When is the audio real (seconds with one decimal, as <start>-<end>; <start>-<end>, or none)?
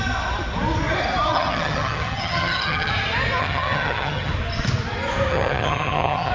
0.0-1.3; 2.9-3.4; 4.3-5.3